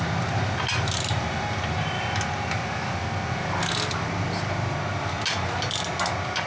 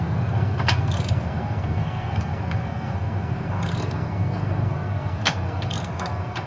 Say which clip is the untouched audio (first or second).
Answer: first